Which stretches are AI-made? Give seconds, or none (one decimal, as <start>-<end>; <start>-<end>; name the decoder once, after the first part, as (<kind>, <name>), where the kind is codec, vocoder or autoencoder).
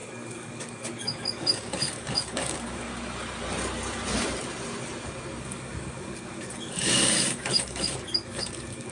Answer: 0.0-2.9 (codec, DAC); 5.4-8.9